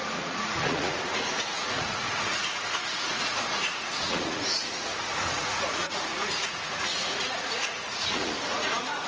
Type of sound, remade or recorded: remade